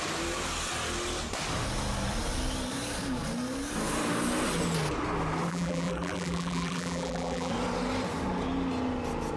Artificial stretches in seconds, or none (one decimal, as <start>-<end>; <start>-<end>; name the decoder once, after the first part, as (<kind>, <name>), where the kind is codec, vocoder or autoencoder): 5.5-7.5 (vocoder, BigVGAN v2)